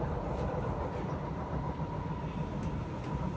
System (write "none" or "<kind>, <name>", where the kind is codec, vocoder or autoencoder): none